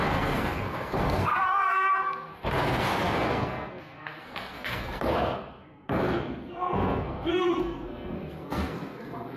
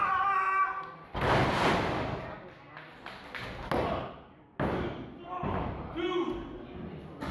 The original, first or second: second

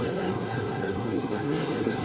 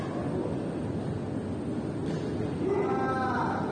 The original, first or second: second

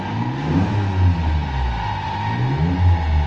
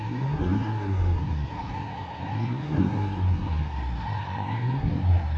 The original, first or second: first